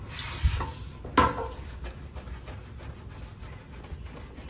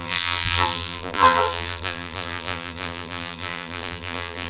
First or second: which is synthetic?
second